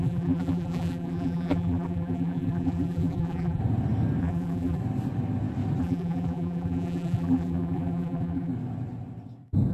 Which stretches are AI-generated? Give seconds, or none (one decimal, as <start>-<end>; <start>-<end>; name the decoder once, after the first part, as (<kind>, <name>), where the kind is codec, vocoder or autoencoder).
0.0-3.6 (vocoder, BigVGAN v2); 4.2-4.8; 5.8-8.5